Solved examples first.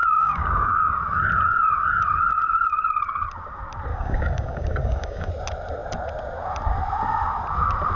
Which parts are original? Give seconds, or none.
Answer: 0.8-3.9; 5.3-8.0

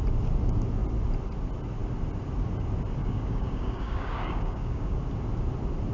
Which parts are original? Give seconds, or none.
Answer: 0.0-3.0; 5.0-5.9